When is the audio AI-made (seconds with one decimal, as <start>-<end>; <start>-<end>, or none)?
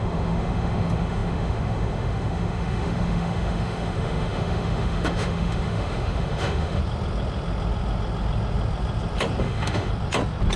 0.0-6.8; 9.4-9.9